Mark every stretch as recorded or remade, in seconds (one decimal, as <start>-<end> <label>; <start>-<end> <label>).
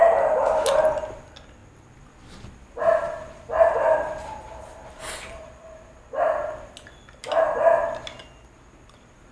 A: 0.0-9.3 recorded